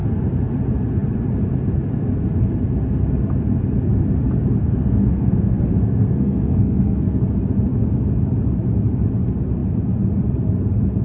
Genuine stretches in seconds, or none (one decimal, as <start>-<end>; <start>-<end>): 0.0-4.6; 7.2-11.0